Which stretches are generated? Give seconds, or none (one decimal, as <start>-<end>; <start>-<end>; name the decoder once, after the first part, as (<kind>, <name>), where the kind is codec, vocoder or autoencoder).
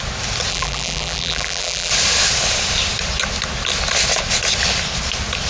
0.5-1.9 (vocoder, BigVGAN v2)